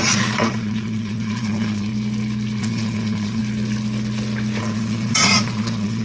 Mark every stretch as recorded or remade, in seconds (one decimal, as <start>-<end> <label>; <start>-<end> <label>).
0.0-1.9 remade; 1.9-2.6 recorded; 2.6-3.4 remade; 3.4-4.6 recorded; 4.6-6.0 remade